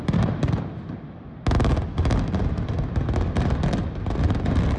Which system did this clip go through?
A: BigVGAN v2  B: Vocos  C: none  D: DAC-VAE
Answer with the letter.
C